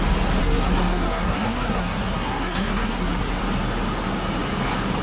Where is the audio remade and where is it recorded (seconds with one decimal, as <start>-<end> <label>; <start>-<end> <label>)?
0.0-0.4 recorded; 0.4-3.4 remade; 3.4-5.0 recorded